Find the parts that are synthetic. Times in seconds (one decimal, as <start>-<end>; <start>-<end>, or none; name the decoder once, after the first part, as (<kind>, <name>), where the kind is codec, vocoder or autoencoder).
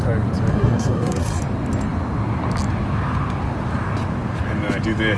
0.5-1.4 (codec, SNAC)